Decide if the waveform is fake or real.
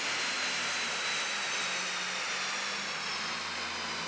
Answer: real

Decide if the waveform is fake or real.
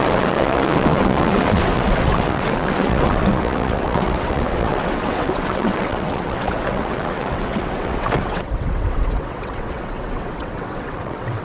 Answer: fake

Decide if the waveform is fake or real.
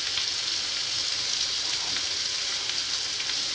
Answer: real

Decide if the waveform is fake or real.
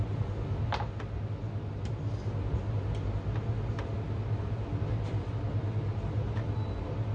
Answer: real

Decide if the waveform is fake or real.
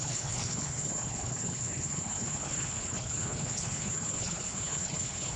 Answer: fake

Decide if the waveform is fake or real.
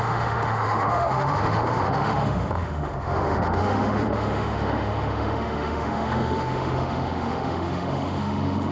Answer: fake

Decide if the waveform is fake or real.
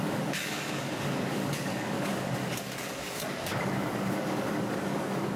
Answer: fake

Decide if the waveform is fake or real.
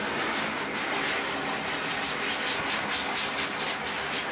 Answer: real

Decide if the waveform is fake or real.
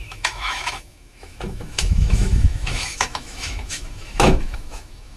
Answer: fake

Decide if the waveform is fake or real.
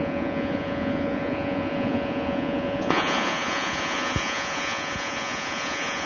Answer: fake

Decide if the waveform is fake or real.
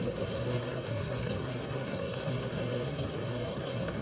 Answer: fake